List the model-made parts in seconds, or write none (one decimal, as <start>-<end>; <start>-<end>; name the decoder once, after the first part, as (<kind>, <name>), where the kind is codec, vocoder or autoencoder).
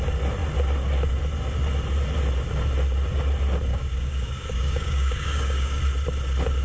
3.7-5.8 (codec, DAC)